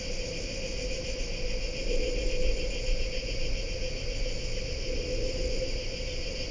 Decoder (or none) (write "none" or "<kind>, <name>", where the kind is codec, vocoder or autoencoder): none